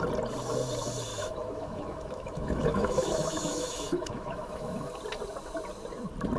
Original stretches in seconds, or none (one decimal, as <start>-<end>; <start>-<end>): 0.0-1.1; 4.9-6.4